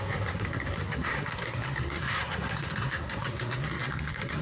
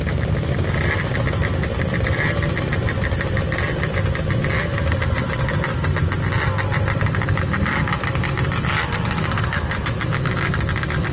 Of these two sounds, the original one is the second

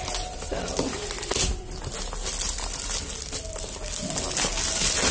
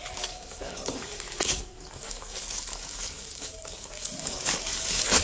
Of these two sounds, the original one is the first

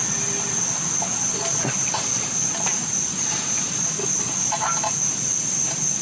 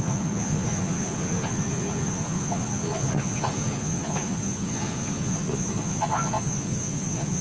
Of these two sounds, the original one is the first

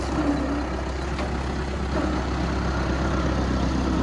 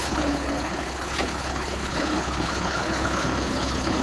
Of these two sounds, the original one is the first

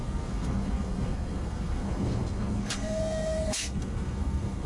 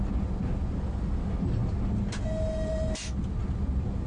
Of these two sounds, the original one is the second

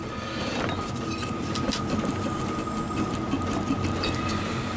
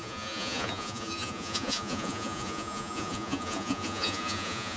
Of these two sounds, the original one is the first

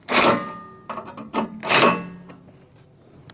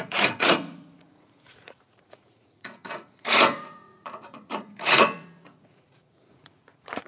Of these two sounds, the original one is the first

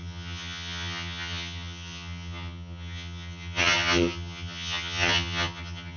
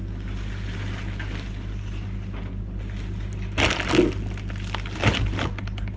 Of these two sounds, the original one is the second